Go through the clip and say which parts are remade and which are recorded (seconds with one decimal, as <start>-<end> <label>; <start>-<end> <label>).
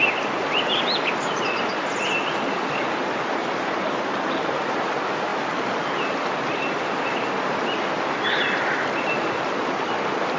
0.0-3.4 recorded; 3.4-4.0 remade; 4.0-10.4 recorded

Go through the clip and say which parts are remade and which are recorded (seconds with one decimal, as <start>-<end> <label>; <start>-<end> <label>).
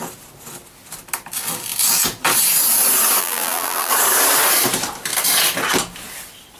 0.0-3.2 recorded; 3.2-3.9 remade; 3.9-6.6 recorded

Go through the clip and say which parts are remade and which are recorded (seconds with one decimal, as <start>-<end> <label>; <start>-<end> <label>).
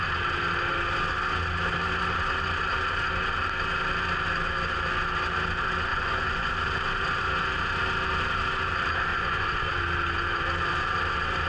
0.0-5.9 recorded; 5.9-6.5 remade; 6.5-9.1 recorded; 9.1-9.8 remade; 9.8-11.5 recorded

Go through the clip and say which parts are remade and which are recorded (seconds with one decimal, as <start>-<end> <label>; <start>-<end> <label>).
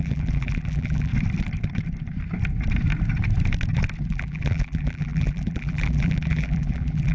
0.0-1.1 remade; 1.1-4.1 recorded; 4.1-7.1 remade